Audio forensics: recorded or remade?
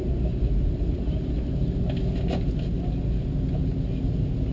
recorded